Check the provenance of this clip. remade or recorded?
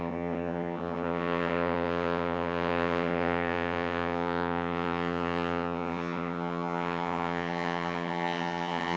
remade